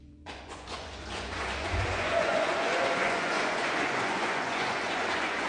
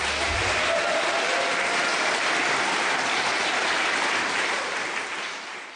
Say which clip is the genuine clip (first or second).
second